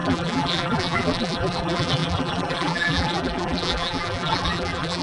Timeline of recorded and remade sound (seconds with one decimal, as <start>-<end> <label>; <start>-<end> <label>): 0.0-5.0 remade